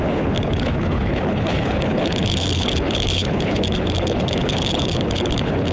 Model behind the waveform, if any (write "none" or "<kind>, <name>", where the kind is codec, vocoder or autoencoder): codec, HILCodec